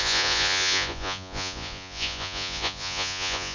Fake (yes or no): yes